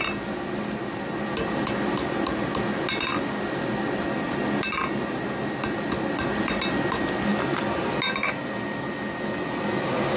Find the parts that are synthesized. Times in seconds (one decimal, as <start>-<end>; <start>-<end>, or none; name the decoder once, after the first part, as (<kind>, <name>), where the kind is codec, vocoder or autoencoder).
none